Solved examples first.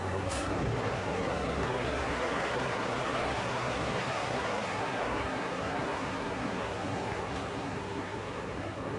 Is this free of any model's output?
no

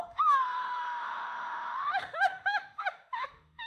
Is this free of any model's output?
no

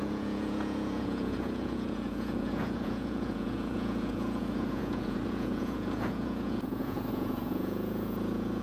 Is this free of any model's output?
no